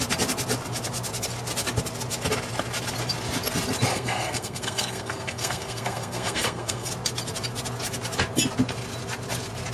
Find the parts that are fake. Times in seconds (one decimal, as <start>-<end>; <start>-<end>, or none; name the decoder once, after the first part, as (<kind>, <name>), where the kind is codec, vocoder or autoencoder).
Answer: 3.9-6.9 (codec, SNAC)